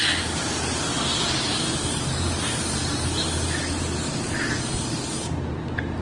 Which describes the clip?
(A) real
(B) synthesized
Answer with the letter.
A